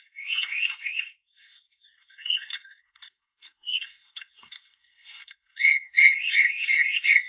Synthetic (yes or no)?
yes